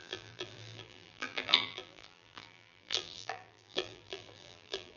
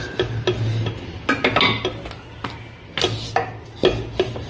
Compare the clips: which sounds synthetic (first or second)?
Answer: first